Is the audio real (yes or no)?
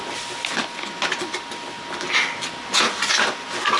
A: yes